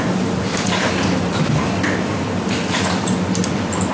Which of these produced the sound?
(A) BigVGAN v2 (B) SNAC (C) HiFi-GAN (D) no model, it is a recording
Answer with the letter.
D